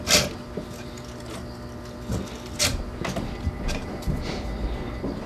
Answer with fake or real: real